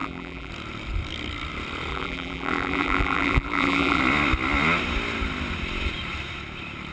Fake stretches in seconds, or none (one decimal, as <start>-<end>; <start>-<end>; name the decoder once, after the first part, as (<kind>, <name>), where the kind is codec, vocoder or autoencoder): 0.0-0.5 (vocoder, BigVGAN v2); 1.9-4.0